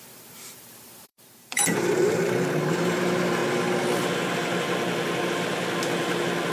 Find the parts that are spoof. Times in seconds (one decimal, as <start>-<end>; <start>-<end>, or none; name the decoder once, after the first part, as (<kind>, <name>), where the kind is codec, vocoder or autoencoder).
0.0-3.4 (vocoder, BigVGAN v2)